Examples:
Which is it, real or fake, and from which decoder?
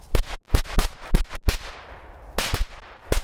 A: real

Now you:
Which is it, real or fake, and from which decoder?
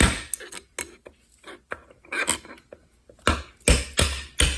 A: real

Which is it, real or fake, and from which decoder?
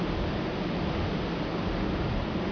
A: real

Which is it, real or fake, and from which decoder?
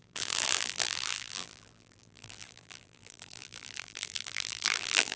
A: fake, vocoder, BigVGAN v2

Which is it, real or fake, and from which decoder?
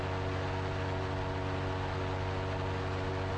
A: real